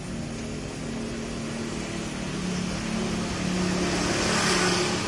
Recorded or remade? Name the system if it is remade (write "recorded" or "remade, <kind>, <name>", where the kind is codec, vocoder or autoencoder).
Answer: recorded